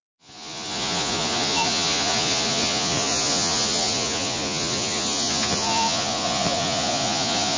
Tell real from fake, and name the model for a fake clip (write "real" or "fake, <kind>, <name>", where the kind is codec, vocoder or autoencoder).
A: fake, vocoder, Vocos